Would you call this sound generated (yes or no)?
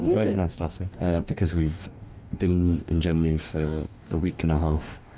yes